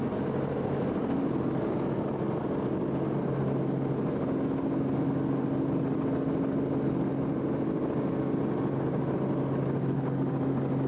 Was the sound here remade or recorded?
recorded